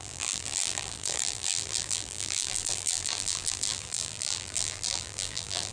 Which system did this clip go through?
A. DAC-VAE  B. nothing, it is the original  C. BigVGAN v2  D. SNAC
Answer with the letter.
C